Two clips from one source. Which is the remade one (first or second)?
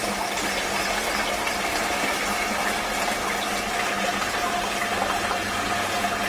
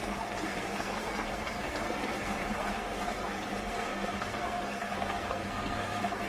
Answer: second